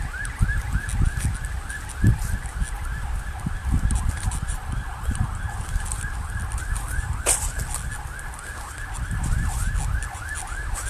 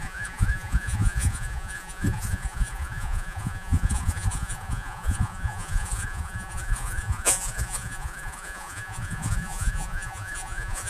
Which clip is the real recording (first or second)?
first